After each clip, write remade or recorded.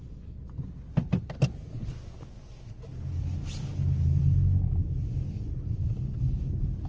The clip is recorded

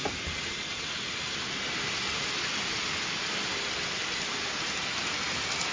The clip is recorded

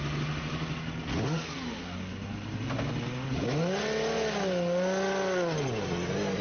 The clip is recorded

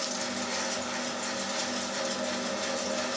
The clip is recorded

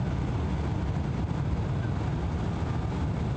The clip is recorded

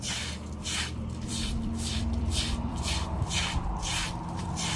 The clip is remade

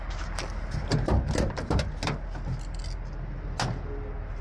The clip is recorded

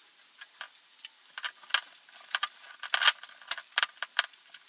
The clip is recorded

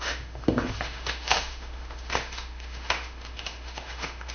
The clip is remade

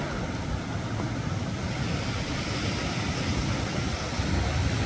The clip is recorded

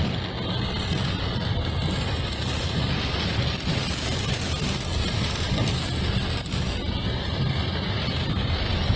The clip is recorded